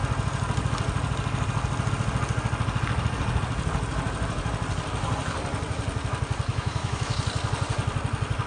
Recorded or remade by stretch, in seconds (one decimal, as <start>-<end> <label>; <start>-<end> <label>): 0.0-6.5 recorded; 6.5-7.2 remade; 7.2-8.5 recorded